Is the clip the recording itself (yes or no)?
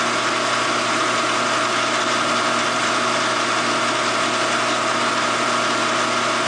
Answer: yes